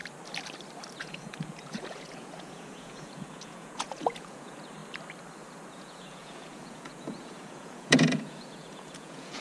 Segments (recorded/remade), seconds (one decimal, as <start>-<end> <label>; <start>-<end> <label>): 0.0-1.0 recorded; 1.0-4.8 remade; 4.8-5.7 recorded; 5.7-9.4 remade